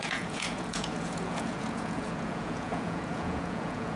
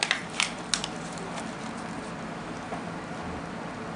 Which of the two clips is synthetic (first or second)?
first